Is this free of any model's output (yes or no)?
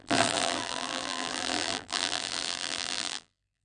no